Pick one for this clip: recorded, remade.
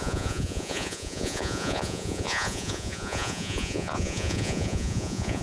remade